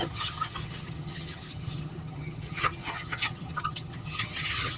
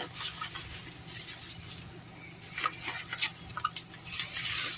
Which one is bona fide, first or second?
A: second